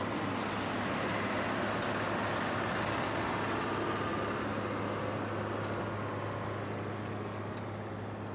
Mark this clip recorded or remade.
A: recorded